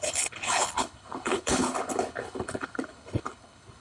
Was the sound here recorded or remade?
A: remade